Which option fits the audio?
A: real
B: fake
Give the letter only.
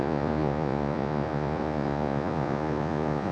B